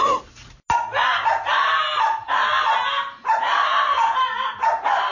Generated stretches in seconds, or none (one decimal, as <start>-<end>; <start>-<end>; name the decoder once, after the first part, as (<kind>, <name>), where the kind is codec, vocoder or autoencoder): none